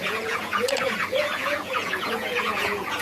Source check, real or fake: fake